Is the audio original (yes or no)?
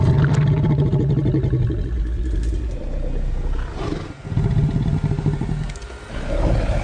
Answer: yes